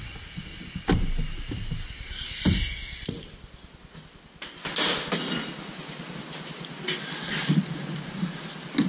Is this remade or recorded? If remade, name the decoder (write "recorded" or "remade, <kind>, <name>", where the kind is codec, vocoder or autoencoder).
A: recorded